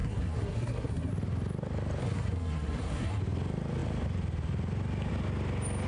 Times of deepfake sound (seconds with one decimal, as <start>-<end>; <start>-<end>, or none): 0.0-1.1; 2.0-3.2